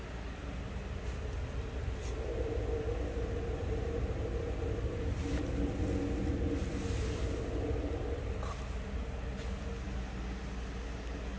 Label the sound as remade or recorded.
recorded